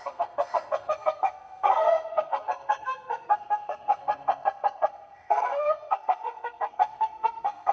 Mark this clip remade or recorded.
remade